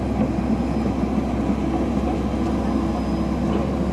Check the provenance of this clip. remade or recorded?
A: recorded